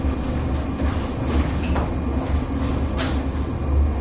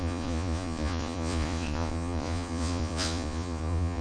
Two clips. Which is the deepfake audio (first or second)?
second